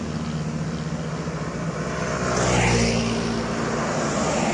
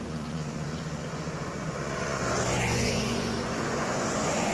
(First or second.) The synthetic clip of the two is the second